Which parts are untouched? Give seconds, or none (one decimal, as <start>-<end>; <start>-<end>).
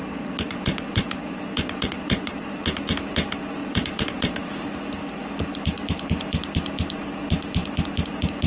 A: 2.6-3.6; 4.5-8.5